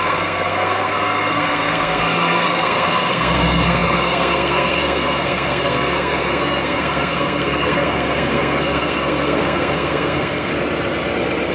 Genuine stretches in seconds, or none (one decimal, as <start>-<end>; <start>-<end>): 10.5-11.5